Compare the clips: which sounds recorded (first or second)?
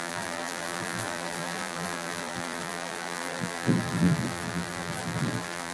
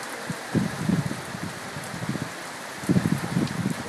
second